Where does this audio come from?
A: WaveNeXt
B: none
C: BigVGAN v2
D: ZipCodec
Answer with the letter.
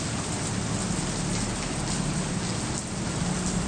B